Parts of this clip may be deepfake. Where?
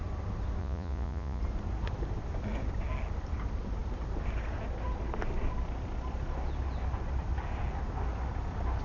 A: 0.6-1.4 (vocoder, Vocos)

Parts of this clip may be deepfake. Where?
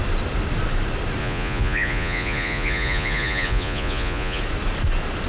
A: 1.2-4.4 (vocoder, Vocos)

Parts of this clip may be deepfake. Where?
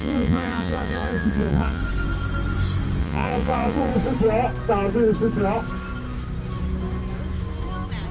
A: 0.0-1.8 (vocoder, Vocos); 3.0-3.9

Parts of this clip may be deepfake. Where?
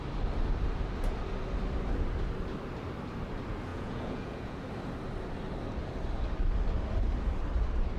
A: 3.7-4.6 (vocoder, Vocos)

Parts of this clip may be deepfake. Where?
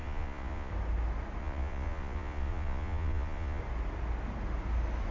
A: 0.0-0.7 (vocoder, Vocos); 1.4-3.6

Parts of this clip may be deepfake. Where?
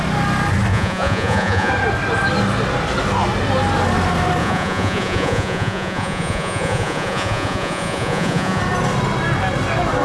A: 0.7-1.7 (vocoder, Vocos); 4.4-8.6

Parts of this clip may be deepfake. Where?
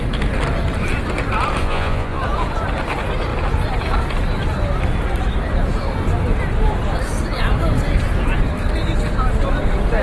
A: 1.6-2.2 (vocoder, Vocos)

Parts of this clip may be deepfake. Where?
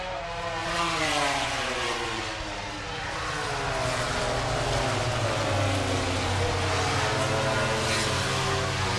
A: 0.6-2.2 (vocoder, Vocos)